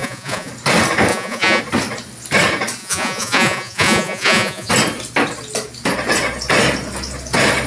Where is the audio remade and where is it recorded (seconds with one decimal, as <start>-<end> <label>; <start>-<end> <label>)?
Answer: 0.0-0.5 remade; 0.5-1.1 recorded; 1.1-1.6 remade; 1.6-2.8 recorded; 2.8-4.7 remade; 4.7-7.7 recorded